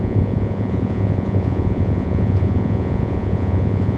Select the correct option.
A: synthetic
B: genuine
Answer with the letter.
A